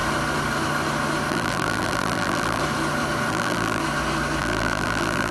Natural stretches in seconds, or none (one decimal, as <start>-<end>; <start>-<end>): 0.0-1.3; 2.6-3.3; 3.8-4.4